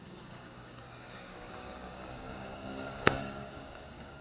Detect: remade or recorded remade